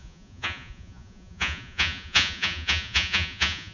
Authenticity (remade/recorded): remade